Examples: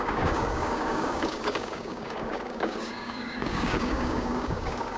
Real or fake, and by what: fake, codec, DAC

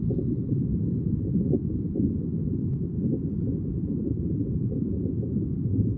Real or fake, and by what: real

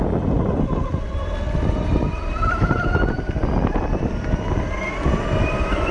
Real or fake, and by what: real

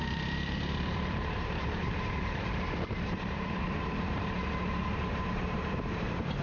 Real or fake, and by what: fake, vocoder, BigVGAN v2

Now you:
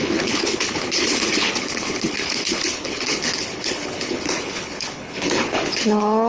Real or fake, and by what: fake, codec, HILCodec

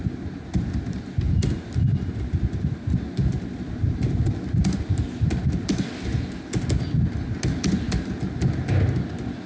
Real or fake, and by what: real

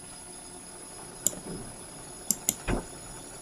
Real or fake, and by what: real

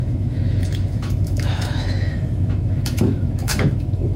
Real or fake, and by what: fake, autoencoder, DAC-VAE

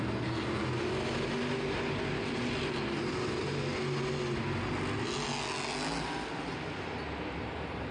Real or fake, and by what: real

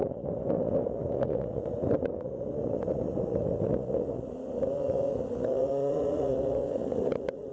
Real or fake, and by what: fake, vocoder, Vocos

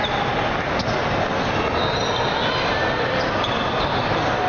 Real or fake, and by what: real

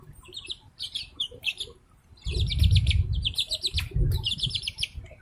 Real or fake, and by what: fake, vocoder, BigVGAN v2